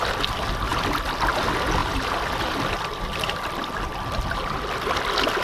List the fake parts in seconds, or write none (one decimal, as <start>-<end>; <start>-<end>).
1.8-5.0